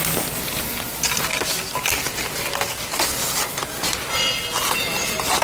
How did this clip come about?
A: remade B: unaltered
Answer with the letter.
B